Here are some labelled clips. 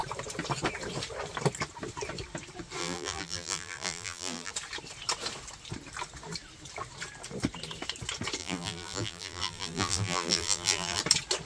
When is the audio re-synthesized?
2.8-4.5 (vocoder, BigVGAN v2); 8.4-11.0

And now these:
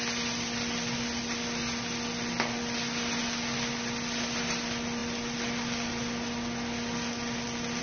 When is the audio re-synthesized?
none

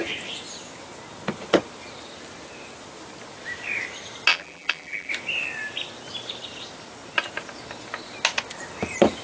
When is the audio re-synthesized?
4.3-5.1 (vocoder, BigVGAN v2)